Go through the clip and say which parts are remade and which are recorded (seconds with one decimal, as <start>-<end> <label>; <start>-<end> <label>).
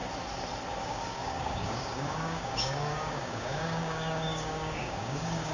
0.0-0.8 recorded; 0.8-5.5 remade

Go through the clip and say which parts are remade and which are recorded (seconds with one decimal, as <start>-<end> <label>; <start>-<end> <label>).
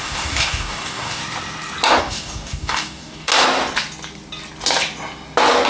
0.0-1.2 remade; 1.2-2.0 recorded; 2.0-3.3 remade; 3.3-5.7 recorded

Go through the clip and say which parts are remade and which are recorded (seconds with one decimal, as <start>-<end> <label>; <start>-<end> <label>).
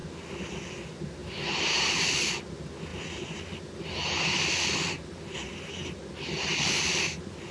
0.0-7.5 recorded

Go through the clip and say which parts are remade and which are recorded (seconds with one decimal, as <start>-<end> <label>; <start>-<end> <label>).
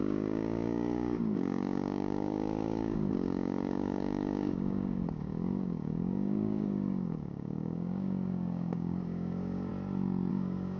0.0-9.7 remade; 9.7-10.3 recorded; 10.3-10.8 remade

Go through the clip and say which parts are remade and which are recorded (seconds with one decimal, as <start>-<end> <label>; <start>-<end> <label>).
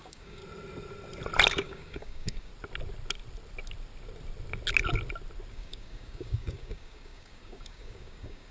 0.0-0.4 remade; 0.4-1.5 recorded; 1.5-2.5 remade; 2.5-5.5 recorded; 5.5-8.5 remade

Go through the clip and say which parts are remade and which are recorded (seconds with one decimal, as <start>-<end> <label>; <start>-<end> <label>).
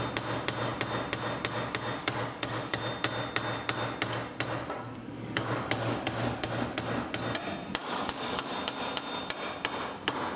0.0-2.0 recorded; 2.0-2.8 remade; 2.8-5.0 recorded; 5.0-6.5 remade; 6.5-7.8 recorded; 7.8-8.5 remade; 8.5-10.4 recorded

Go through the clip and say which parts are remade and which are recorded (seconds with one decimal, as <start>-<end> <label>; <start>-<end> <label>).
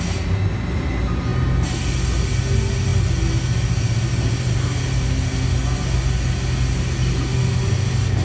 0.0-8.2 recorded